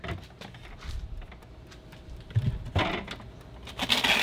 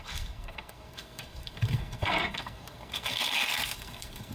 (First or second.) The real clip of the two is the first